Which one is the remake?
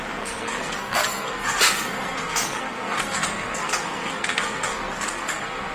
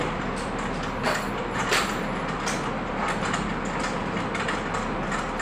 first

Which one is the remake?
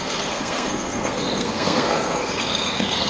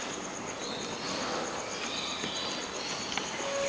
first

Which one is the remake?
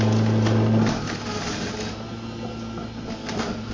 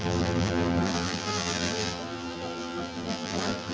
second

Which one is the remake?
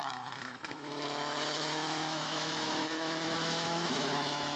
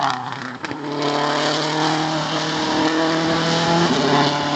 first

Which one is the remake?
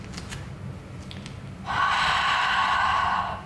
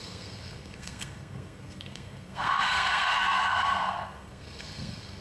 second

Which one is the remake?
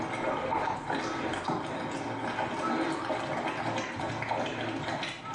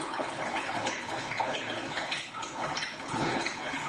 second